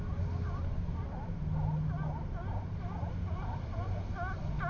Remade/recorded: recorded